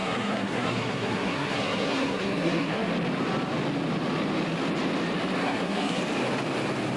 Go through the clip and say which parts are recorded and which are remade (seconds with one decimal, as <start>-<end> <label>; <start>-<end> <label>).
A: 0.0-2.9 remade; 2.9-5.4 recorded; 5.4-6.0 remade; 6.0-7.0 recorded